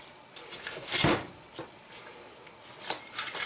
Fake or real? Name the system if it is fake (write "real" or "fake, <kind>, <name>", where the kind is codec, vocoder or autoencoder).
real